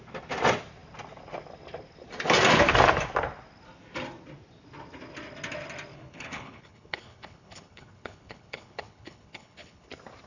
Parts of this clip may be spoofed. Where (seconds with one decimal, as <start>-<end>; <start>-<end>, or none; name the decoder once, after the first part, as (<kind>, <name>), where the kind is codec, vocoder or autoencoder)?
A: 5.9-9.9 (codec, HILCodec)